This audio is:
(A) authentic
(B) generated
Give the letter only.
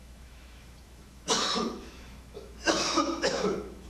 B